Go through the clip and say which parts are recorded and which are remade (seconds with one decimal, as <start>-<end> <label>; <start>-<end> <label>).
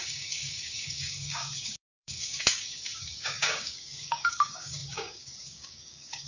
0.0-6.3 remade